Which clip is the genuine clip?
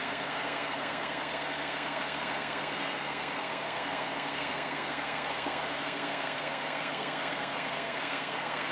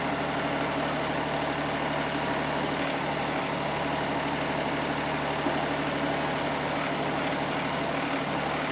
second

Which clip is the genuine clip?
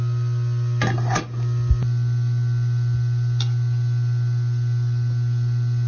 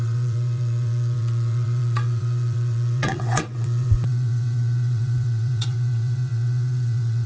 first